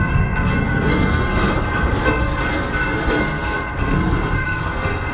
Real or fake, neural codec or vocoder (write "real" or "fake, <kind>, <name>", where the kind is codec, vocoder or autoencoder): fake, codec, SNAC